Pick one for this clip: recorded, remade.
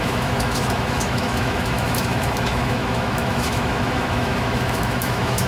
remade